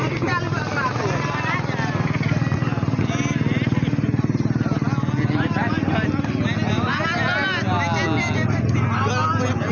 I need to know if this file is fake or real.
real